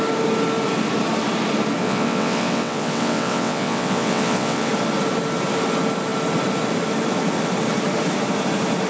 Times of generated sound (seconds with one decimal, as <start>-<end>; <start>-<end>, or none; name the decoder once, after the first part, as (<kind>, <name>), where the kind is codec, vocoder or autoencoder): 1.8-4.7 (vocoder, WaveNeXt)